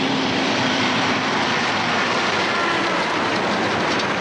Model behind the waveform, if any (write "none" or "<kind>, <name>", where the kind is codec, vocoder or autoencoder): vocoder, BigVGAN v2